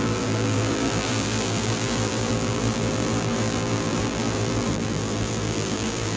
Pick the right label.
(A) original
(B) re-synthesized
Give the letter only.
B